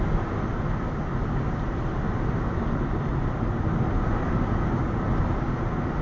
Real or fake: real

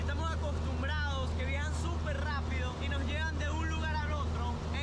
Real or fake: real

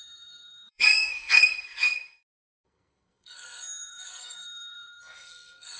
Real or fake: fake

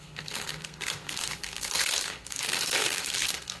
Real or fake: fake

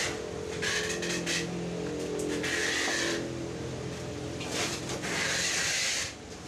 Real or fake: real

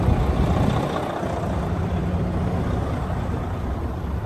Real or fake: real